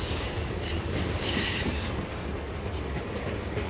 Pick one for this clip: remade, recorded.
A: remade